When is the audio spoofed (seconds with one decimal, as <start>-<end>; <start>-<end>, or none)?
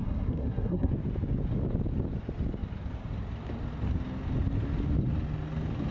0.0-0.9